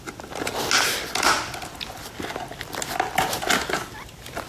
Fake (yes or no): no